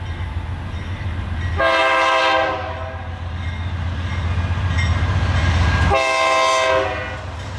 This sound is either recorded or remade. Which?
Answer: recorded